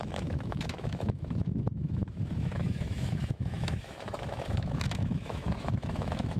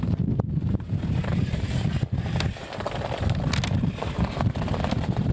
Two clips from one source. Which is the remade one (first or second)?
first